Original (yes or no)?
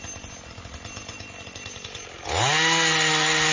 yes